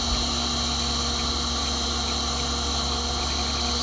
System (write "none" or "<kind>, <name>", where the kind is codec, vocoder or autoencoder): none